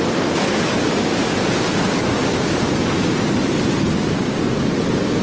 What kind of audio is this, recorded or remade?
recorded